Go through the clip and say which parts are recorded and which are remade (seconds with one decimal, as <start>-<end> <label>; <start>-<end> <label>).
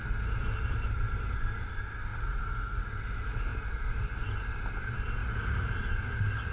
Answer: 0.0-2.1 recorded; 2.1-3.0 remade; 3.0-5.2 recorded; 5.2-5.7 remade; 5.7-6.5 recorded